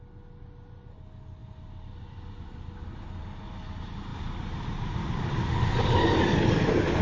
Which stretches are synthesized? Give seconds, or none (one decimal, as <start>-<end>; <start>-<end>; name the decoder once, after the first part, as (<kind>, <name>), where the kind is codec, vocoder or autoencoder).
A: 4.1-5.6 (vocoder, BigVGAN v2)